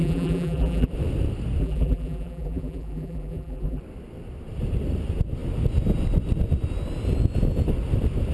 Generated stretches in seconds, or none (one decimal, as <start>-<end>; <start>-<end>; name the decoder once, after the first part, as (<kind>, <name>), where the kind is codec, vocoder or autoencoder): 0.0-0.9 (vocoder, BigVGAN v2); 1.6-3.8